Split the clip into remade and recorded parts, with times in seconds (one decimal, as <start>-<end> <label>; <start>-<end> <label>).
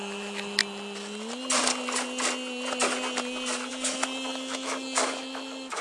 0.0-0.6 remade; 0.6-3.7 recorded; 3.7-5.8 remade